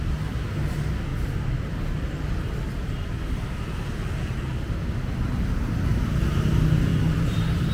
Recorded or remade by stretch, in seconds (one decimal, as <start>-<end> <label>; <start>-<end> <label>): 0.0-6.9 recorded; 6.9-7.7 remade